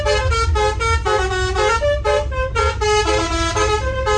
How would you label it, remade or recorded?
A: recorded